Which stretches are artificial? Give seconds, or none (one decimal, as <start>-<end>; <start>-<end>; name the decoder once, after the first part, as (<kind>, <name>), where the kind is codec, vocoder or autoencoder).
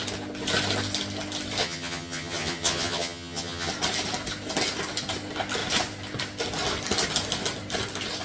1.6-3.7 (vocoder, HiFi-GAN)